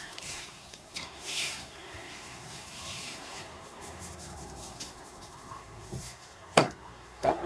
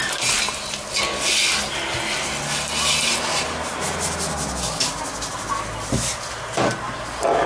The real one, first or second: second